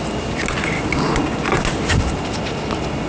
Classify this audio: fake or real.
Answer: real